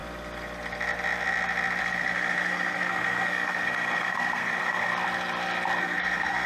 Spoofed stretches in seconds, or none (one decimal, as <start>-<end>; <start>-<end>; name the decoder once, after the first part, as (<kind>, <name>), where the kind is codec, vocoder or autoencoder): 1.8-4.9 (codec, SNAC); 5.8-6.5